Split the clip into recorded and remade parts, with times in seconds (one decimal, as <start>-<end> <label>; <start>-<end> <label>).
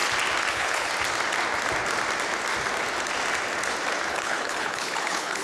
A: 0.0-0.5 recorded; 0.5-0.9 remade; 0.9-4.1 recorded; 4.1-5.4 remade